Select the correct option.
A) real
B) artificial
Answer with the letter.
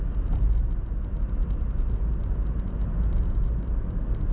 A